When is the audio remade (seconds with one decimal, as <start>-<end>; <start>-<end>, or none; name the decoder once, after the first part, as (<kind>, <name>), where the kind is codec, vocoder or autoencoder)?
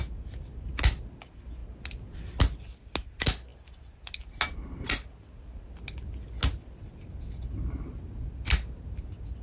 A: none